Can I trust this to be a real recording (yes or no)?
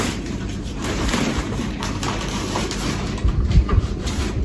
no